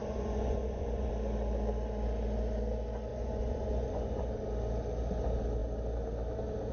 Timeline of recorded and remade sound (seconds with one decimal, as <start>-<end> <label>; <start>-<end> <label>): 0.0-1.1 remade; 1.1-3.1 recorded; 3.1-4.2 remade; 4.2-6.7 recorded